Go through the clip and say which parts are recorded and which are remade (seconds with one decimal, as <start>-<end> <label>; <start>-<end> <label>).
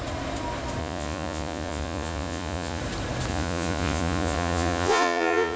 0.0-0.8 recorded; 0.8-2.8 remade; 2.8-3.3 recorded; 3.3-5.6 remade